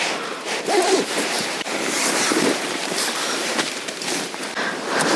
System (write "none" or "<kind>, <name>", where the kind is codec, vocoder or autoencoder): vocoder, BigVGAN v2